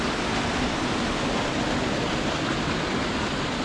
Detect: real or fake real